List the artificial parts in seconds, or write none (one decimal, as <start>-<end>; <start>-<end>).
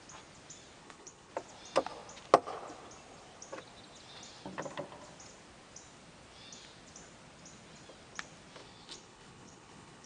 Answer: 0.8-1.3; 8.6-10.1